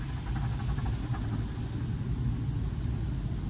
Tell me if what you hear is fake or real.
real